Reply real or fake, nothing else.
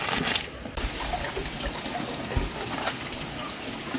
real